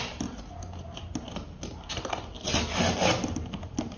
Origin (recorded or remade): recorded